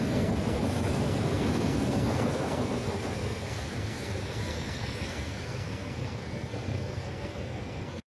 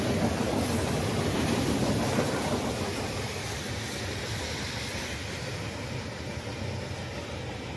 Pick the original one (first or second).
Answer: second